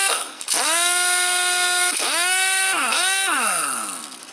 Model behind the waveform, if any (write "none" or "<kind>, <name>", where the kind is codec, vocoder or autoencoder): codec, SNAC